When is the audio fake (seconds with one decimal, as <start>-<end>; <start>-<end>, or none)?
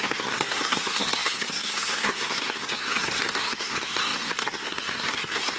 0.0-5.6